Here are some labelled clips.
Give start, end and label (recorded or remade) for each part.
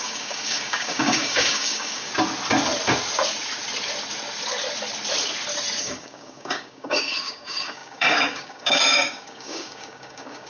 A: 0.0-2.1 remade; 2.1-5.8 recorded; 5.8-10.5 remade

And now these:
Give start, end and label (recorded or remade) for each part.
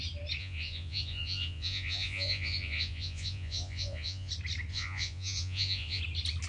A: 0.0-0.4 recorded; 0.4-4.3 remade; 4.3-4.7 recorded; 4.7-6.0 remade; 6.0-6.5 recorded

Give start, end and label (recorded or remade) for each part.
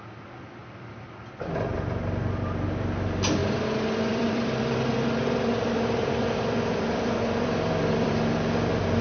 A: 0.0-3.4 remade; 3.4-4.0 recorded; 4.0-9.0 remade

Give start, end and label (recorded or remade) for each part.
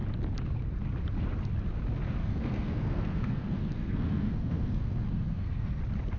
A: 0.0-2.2 recorded; 2.2-5.8 remade; 5.8-6.2 recorded